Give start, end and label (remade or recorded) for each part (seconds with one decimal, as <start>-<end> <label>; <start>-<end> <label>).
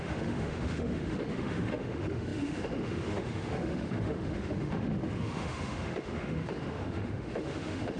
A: 0.0-8.0 remade